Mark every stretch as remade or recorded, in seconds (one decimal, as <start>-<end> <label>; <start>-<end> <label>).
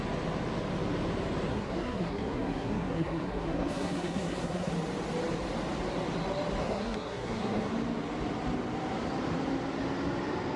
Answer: 0.0-1.5 recorded; 1.5-4.7 remade; 4.7-6.6 recorded; 6.6-7.7 remade; 7.7-10.6 recorded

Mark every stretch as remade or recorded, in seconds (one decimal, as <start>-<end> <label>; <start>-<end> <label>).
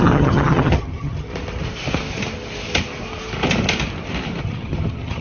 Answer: 0.0-1.3 remade; 1.3-4.4 recorded; 4.4-5.2 remade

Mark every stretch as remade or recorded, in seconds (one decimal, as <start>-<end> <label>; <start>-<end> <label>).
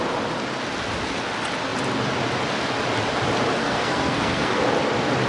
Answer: 0.0-3.6 recorded; 3.6-4.6 remade; 4.6-5.3 recorded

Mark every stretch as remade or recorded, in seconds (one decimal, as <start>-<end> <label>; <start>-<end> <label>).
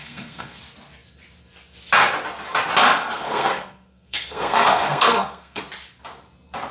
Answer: 0.0-0.6 remade; 0.6-3.1 recorded; 3.1-5.6 remade; 5.6-6.7 recorded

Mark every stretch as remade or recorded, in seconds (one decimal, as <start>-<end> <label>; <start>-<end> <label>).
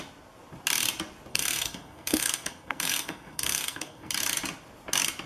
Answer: 0.0-1.3 recorded; 1.3-4.1 remade; 4.1-5.3 recorded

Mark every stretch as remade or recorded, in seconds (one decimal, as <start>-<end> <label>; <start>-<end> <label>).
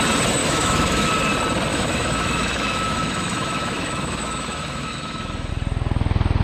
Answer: 0.0-0.4 recorded; 0.4-1.1 remade; 1.1-1.7 recorded; 1.7-5.5 remade; 5.5-6.4 recorded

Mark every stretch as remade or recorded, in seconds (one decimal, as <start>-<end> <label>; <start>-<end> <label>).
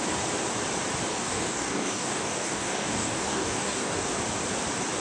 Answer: 0.0-1.1 recorded; 1.1-4.1 remade; 4.1-5.0 recorded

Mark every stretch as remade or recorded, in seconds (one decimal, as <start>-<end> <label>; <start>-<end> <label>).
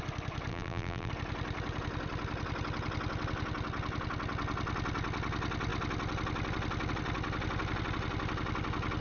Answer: 0.0-0.5 recorded; 0.5-1.1 remade; 1.1-9.0 recorded